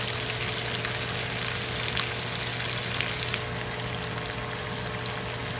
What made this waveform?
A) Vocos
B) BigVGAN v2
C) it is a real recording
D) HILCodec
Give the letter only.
C